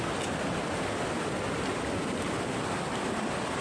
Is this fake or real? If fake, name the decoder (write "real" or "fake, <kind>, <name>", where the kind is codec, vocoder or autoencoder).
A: real